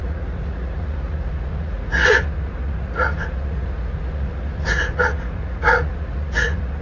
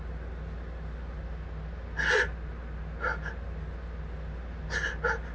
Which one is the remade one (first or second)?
first